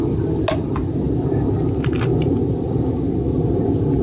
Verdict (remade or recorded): recorded